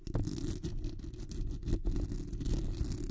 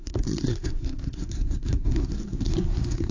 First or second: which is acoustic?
first